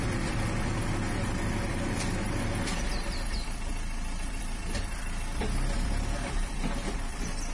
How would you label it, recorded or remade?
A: remade